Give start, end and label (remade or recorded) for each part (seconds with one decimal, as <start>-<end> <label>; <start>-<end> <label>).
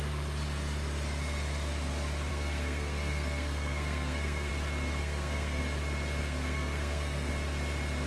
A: 0.0-2.3 recorded; 2.3-4.5 remade; 4.5-5.0 recorded; 5.0-5.6 remade; 5.6-6.2 recorded; 6.2-7.3 remade; 7.3-8.1 recorded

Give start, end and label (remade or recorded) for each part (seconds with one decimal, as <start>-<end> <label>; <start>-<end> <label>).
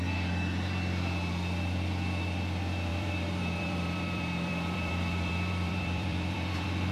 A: 0.0-2.9 recorded; 2.9-6.9 remade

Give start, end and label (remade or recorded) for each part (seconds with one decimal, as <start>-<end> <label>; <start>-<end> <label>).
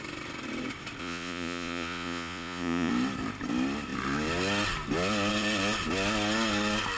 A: 0.0-1.0 recorded; 1.0-2.9 remade; 2.9-7.0 recorded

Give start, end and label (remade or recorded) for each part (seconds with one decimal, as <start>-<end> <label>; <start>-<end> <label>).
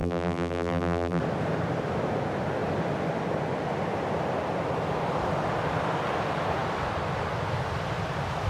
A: 0.0-1.2 remade; 1.2-8.5 recorded